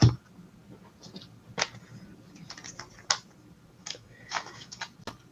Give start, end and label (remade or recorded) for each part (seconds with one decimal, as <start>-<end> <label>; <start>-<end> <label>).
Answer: 0.0-3.8 recorded; 3.8-4.8 remade; 4.8-5.3 recorded